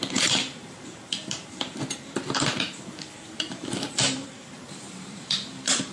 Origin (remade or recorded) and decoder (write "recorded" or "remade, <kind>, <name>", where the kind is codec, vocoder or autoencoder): remade, vocoder, BigVGAN v2